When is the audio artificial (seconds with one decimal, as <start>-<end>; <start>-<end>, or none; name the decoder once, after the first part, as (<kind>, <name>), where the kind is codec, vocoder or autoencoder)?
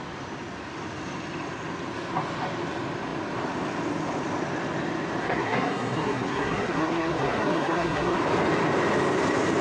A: 5.2-8.2 (codec, SNAC)